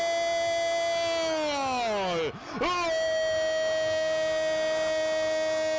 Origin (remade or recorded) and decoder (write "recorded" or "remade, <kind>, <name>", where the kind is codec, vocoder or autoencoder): recorded